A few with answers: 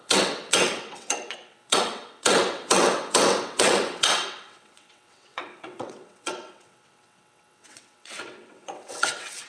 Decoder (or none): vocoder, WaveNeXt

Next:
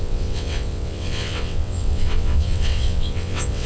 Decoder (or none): vocoder, WaveNeXt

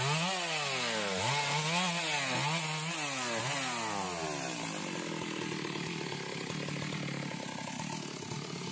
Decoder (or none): none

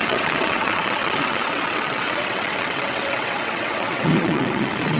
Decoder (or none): vocoder, WaveNeXt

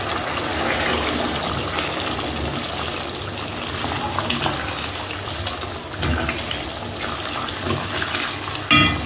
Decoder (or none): none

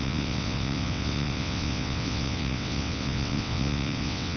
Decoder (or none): vocoder, WaveNeXt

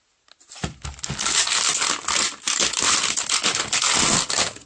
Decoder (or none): none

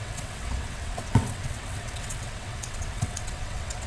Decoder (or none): vocoder, WaveNeXt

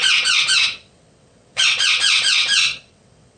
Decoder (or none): vocoder, WaveNeXt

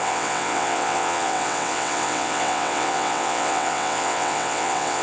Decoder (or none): vocoder, WaveNeXt